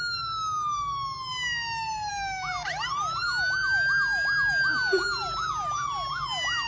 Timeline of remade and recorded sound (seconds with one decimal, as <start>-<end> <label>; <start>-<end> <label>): 0.0-6.7 recorded